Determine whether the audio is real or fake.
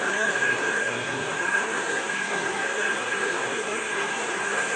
fake